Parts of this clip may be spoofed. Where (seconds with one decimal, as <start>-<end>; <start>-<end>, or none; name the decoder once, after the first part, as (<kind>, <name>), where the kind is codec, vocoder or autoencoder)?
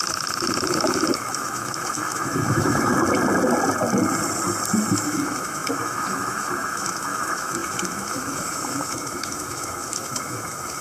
0.0-2.9 (autoencoder, DAC-VAE); 4.9-10.8